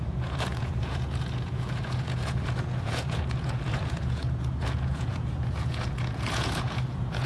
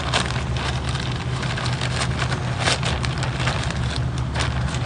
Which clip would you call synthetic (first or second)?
first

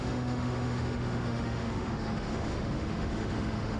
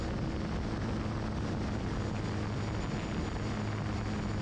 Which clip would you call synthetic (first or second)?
first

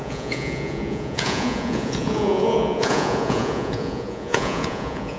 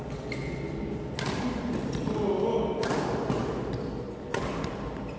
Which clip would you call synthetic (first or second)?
first